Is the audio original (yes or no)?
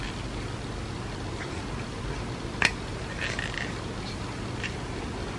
yes